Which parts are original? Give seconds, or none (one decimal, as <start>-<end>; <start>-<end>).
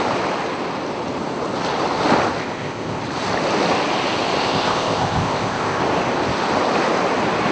0.0-2.4; 3.0-4.4; 5.8-7.5